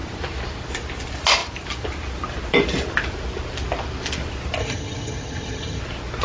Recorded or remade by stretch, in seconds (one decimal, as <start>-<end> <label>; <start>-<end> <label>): 0.0-4.6 recorded; 4.6-5.8 remade; 5.8-6.2 recorded